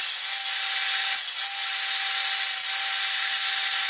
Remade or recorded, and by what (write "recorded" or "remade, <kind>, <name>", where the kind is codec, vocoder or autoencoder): recorded